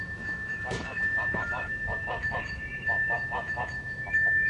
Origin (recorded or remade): remade